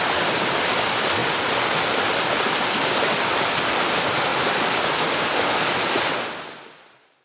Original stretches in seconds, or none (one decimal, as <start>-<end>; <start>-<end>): 0.0-7.2